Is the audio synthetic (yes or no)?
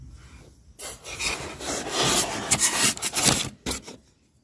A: no